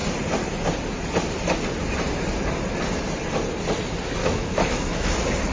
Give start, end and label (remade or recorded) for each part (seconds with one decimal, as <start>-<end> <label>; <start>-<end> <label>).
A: 0.0-4.2 recorded; 4.2-5.1 remade; 5.1-5.5 recorded